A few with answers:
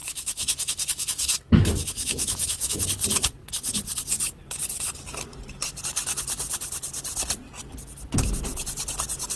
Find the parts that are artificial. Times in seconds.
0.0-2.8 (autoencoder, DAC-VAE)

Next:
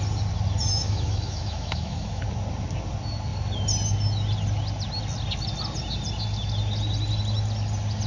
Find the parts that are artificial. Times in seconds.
0.6-2.2 (autoencoder, DAC-VAE)

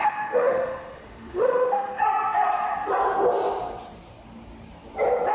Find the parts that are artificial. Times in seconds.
0.0-2.0 (autoencoder, DAC-VAE)

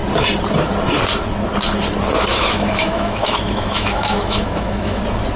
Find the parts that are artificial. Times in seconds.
2.3-5.0 (autoencoder, DAC-VAE)